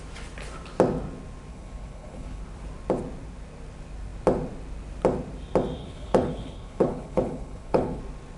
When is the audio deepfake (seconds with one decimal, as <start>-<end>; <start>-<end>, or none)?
1.5-2.4; 5.8-8.0